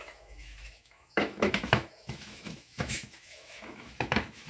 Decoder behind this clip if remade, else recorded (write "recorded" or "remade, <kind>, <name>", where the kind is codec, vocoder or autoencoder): remade, autoencoder, DAC-VAE